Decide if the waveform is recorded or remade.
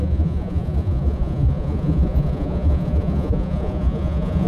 remade